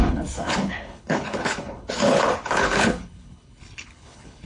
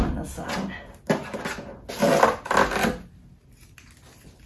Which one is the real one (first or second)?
second